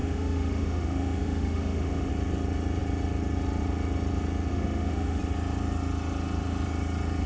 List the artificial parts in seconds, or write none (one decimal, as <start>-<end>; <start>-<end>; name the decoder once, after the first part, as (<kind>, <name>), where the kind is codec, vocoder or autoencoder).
0.0-2.1 (autoencoder, DAC-VAE); 4.5-5.2